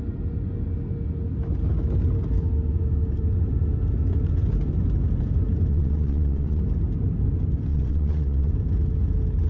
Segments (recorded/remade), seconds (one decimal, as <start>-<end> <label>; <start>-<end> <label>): 0.0-5.7 recorded; 5.7-6.6 remade; 6.6-7.7 recorded; 7.7-8.5 remade; 8.5-9.5 recorded